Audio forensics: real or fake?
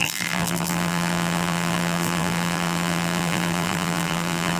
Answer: fake